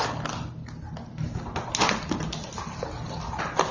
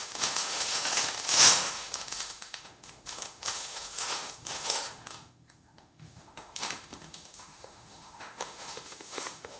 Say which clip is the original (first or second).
first